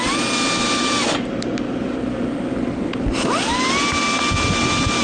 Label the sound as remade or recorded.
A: recorded